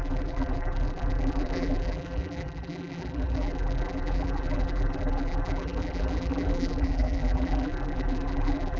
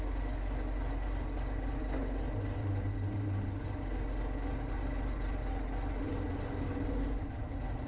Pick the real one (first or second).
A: second